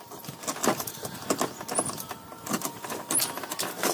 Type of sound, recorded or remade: recorded